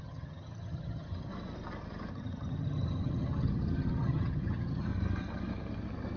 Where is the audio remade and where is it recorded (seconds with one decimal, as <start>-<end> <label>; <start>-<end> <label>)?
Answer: 0.0-1.3 remade; 1.3-2.1 recorded; 2.1-4.9 remade; 4.9-6.2 recorded